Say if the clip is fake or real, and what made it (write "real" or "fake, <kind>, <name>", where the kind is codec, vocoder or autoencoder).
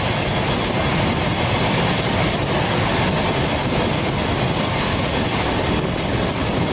real